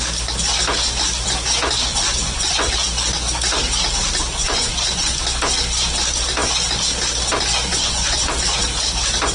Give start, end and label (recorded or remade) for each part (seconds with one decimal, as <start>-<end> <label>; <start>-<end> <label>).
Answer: 0.0-1.9 recorded; 1.9-2.7 remade; 2.7-4.4 recorded; 4.4-5.2 remade; 5.2-7.7 recorded; 7.7-8.3 remade; 8.3-9.3 recorded